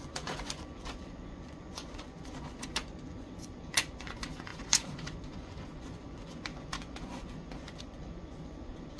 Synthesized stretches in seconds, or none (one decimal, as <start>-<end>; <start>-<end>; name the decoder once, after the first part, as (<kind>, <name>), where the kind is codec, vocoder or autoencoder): 0.0-9.0 (vocoder, Vocos)

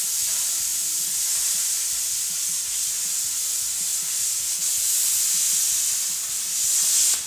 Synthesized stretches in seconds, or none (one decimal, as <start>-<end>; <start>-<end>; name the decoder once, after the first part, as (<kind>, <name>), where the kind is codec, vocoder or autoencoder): none

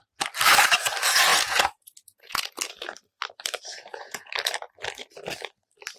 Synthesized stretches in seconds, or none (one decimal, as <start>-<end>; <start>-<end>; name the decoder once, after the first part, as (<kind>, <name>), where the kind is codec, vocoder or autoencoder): 1.3-2.6 (vocoder, Vocos); 3.7-4.3